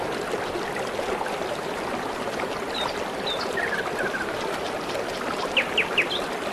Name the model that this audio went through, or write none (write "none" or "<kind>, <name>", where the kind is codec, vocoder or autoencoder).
none